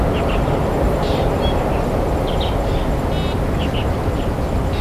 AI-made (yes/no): no